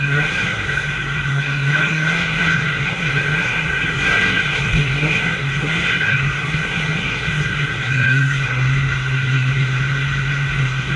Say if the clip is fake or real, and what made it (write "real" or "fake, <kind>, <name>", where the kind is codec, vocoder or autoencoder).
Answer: fake, codec, SNAC